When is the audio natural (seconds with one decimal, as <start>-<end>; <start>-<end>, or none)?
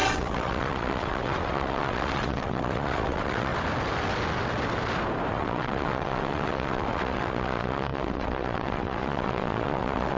3.5-5.3